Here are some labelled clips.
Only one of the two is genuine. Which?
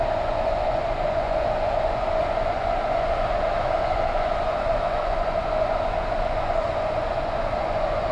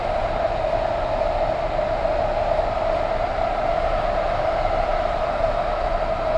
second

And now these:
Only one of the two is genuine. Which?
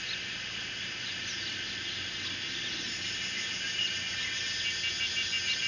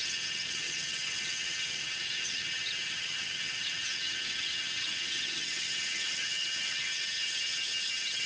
first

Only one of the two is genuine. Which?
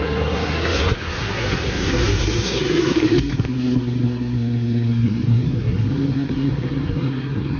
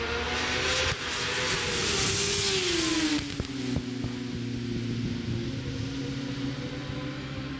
second